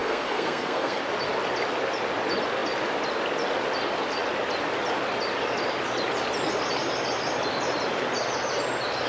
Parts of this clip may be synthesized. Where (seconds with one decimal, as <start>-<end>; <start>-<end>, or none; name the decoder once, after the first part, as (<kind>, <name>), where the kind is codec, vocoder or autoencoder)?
0.0-1.0 (codec, SNAC)